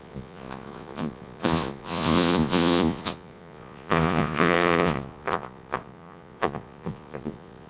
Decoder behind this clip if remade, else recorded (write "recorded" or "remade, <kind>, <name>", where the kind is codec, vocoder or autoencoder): remade, vocoder, Vocos